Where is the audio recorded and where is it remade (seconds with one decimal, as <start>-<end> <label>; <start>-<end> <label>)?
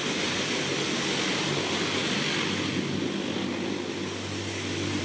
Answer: 0.0-5.0 recorded